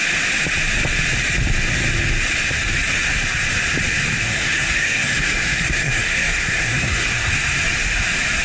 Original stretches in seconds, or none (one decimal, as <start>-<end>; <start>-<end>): 0.0-4.2; 7.3-8.4